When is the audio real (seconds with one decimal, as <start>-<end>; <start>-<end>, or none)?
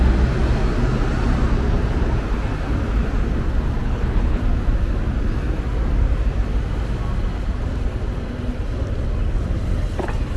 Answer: 0.0-3.8; 4.4-10.4